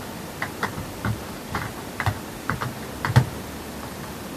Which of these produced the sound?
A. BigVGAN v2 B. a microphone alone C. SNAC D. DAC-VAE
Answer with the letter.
A